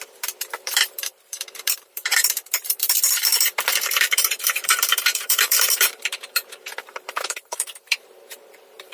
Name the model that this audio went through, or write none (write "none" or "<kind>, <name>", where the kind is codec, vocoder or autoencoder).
vocoder, BigVGAN v2